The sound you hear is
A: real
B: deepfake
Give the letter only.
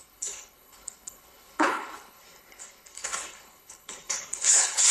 B